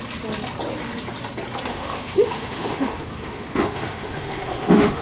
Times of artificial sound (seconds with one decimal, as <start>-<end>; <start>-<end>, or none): 1.7-5.0

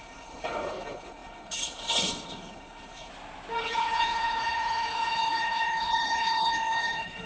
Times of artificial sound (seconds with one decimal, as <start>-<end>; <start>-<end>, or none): 0.0-3.1; 3.6-7.3

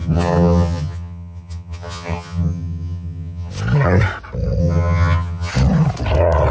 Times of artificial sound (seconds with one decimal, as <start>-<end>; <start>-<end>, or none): 0.0-3.5; 4.6-5.5